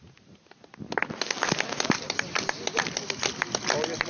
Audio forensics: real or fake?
real